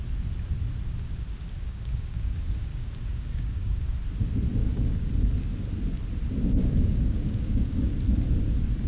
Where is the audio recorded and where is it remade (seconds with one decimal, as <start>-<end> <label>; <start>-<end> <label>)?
0.0-1.6 recorded; 1.6-3.9 remade; 3.9-4.6 recorded; 4.6-5.1 remade; 5.1-6.6 recorded; 6.6-7.9 remade; 7.9-8.9 recorded